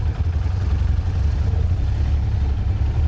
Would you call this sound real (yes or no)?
yes